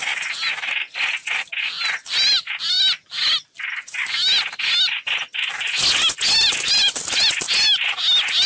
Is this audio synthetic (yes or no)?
no